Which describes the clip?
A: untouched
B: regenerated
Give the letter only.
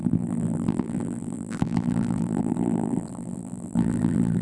B